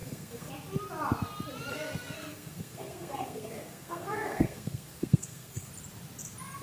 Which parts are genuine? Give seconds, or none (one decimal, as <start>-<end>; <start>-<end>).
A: 0.5-1.7; 5.7-6.6